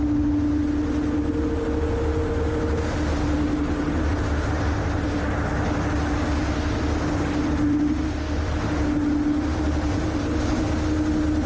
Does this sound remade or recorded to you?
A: recorded